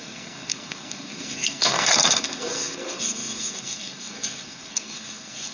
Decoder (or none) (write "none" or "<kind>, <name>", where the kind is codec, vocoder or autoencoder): codec, SNAC